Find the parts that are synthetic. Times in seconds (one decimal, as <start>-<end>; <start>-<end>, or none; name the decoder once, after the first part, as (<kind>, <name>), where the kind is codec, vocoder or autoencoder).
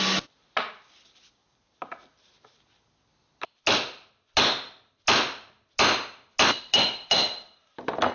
none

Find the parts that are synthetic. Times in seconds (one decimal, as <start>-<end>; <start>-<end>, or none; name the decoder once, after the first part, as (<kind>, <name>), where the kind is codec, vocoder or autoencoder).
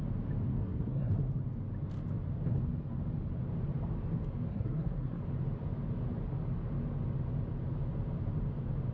0.5-1.1 (codec, SNAC); 4.5-5.2